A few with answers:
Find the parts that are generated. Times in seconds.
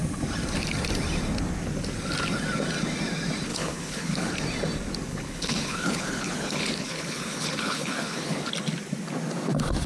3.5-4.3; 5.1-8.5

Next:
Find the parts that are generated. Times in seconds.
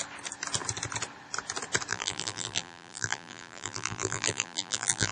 1.9-5.1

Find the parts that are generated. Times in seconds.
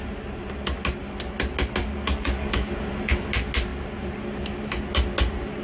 1.8-2.7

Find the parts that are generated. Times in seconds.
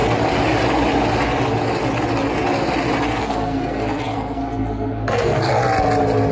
3.2-5.6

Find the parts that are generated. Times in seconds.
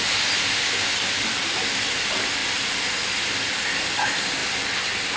none